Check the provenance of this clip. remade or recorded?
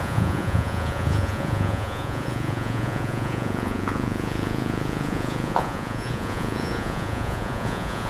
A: remade